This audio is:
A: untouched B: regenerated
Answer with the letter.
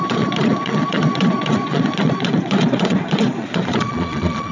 B